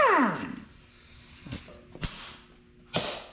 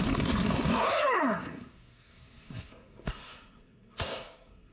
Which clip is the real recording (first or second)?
first